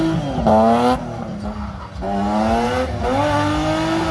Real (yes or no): yes